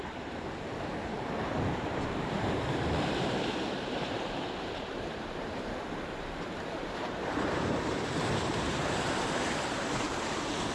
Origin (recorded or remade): remade